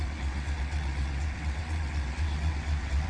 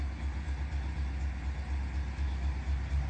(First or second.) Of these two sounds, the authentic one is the second